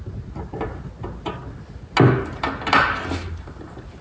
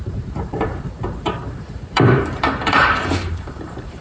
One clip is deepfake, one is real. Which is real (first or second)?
first